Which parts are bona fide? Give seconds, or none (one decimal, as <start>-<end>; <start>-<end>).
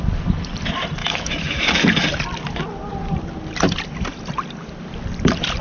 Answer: 0.0-1.0; 1.6-5.6